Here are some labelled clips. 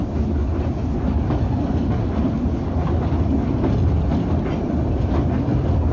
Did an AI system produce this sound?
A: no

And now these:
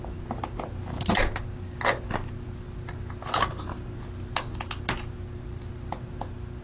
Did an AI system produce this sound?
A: no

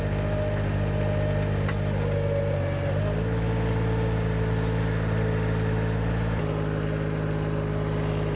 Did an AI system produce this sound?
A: no